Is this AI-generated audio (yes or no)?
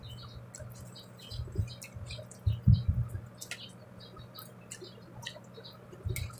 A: no